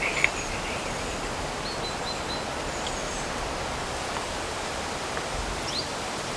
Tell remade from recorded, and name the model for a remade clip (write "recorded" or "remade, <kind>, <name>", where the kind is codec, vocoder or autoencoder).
recorded